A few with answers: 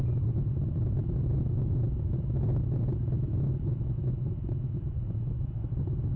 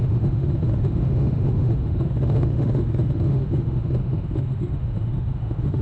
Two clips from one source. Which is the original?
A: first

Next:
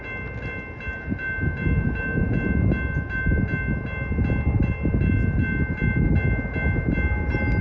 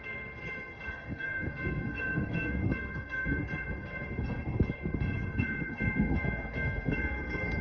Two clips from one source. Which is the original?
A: first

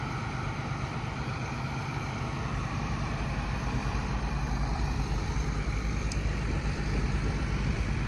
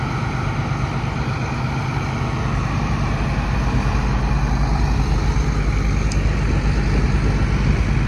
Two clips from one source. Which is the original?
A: second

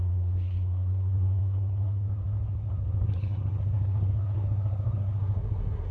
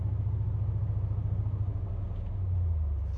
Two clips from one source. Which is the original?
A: second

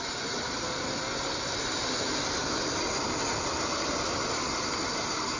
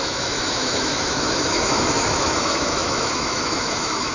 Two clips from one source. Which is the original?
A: first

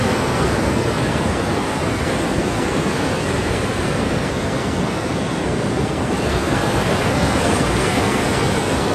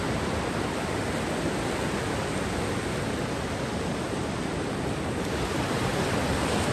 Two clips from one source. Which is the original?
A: second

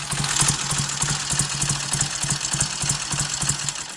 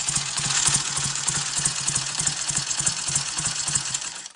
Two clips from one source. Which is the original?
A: first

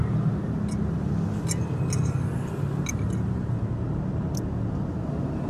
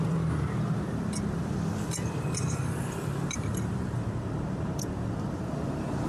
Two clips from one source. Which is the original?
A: first